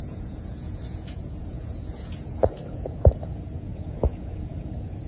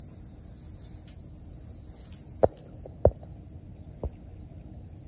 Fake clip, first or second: first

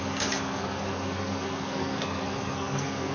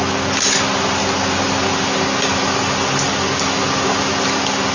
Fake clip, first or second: first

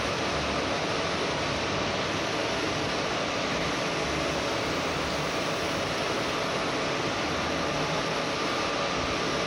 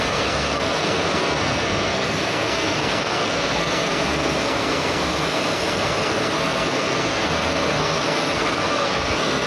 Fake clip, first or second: second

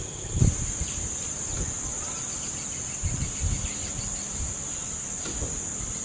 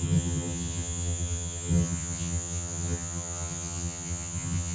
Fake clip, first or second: second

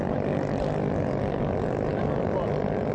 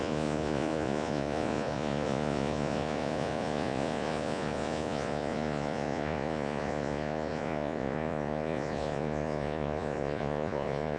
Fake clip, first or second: second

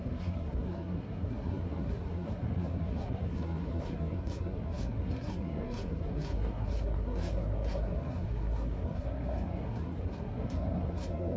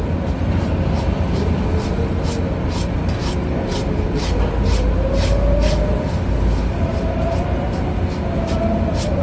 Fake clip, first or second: first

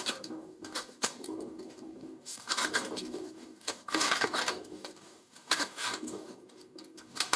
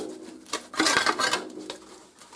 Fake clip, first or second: first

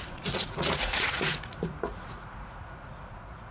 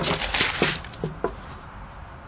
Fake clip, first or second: first